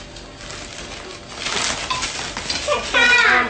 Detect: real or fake real